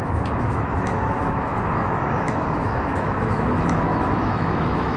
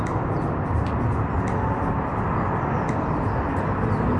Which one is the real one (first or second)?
second